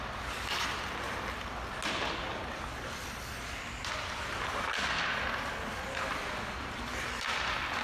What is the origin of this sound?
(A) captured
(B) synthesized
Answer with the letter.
A